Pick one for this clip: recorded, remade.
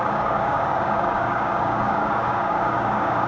remade